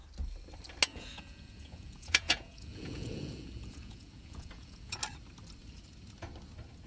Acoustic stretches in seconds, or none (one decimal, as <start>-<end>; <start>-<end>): 0.0-0.9; 5.0-6.9